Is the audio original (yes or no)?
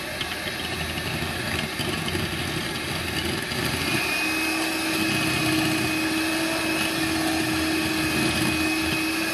yes